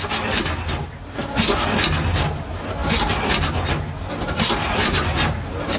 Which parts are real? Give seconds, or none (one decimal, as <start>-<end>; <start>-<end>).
0.0-4.0; 5.3-5.8